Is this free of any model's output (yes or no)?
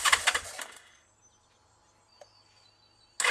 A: yes